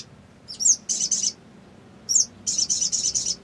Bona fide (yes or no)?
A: yes